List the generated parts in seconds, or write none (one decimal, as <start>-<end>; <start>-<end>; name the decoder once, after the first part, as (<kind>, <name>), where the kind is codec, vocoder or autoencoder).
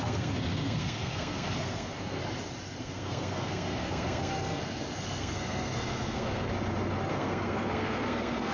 0.0-2.2 (codec, SNAC); 2.8-6.5; 7.1-8.5